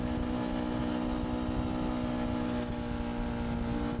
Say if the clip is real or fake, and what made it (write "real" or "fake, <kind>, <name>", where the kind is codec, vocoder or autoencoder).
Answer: real